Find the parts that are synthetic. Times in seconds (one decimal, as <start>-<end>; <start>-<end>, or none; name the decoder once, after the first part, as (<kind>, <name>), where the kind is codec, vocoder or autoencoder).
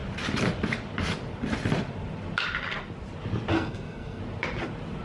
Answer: 3.5-4.2 (codec, SNAC)